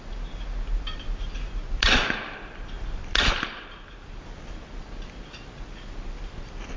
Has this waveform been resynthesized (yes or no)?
no